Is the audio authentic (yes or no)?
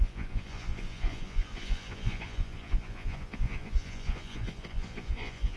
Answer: no